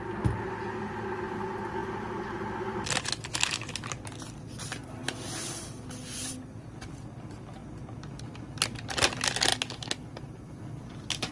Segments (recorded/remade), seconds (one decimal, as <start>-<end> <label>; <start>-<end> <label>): 0.0-11.3 recorded